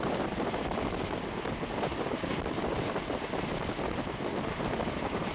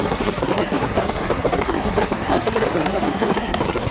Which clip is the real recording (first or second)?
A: first